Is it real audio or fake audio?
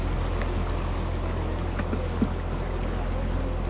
real